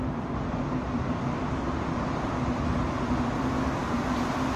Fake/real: real